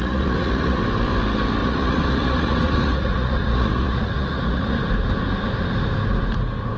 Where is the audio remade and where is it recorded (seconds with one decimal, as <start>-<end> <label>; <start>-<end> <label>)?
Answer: 0.0-0.8 remade; 0.8-1.6 recorded; 1.6-4.8 remade; 4.8-6.8 recorded